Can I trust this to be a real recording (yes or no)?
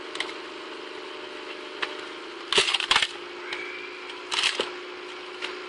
yes